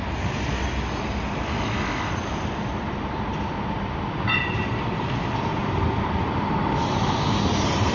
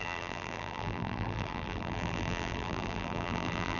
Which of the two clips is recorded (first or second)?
first